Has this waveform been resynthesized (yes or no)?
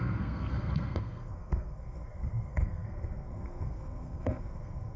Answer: yes